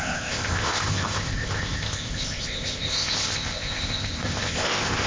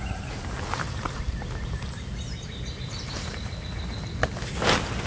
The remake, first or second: first